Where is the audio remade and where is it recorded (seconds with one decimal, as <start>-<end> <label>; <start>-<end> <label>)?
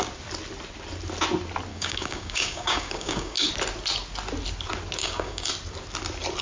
0.0-1.7 recorded; 1.7-3.5 remade; 3.5-5.0 recorded; 5.0-5.5 remade; 5.5-6.4 recorded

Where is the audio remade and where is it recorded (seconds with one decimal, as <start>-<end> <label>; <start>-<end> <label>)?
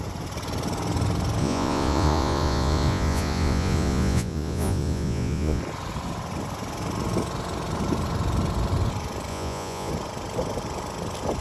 0.0-1.4 recorded; 1.4-5.6 remade; 5.6-9.3 recorded; 9.3-9.9 remade; 9.9-11.4 recorded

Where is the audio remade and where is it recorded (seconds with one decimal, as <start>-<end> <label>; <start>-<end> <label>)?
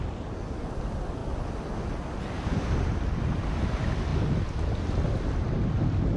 0.0-6.2 recorded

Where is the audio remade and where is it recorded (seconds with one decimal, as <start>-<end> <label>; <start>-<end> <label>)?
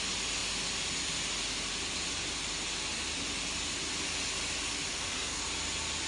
0.0-4.9 recorded; 4.9-5.4 remade; 5.4-6.1 recorded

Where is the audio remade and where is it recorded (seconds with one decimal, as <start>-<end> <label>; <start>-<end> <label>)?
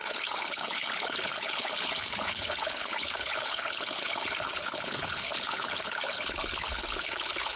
0.0-7.6 remade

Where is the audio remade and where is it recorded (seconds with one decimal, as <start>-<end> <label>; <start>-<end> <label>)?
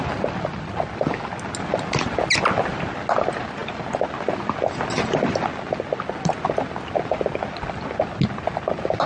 0.0-9.1 recorded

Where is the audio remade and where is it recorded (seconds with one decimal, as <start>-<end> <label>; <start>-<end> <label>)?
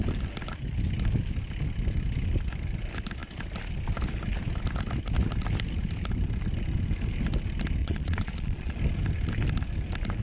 0.0-7.8 recorded; 7.8-8.8 remade; 8.8-10.2 recorded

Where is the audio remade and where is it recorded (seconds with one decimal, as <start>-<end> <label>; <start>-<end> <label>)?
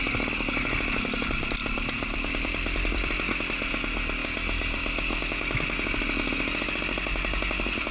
0.0-1.6 recorded; 1.6-3.1 remade; 3.1-7.9 recorded